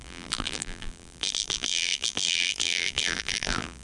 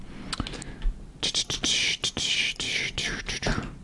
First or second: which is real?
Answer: second